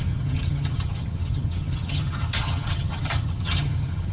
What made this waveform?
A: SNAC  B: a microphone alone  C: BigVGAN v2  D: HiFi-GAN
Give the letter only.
D